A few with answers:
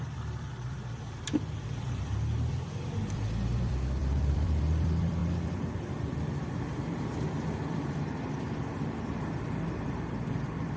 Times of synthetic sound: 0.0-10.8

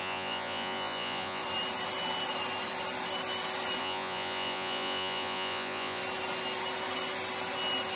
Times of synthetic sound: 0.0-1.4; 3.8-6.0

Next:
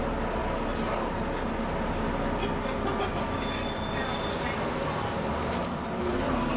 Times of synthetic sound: none

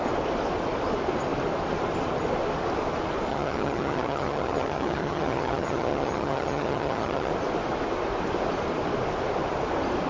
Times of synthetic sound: 3.3-7.3

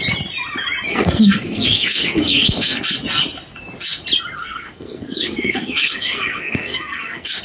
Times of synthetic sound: 0.9-2.8; 4.4-7.4

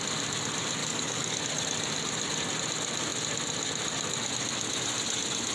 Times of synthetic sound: 0.8-1.4

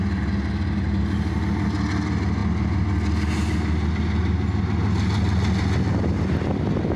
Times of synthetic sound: none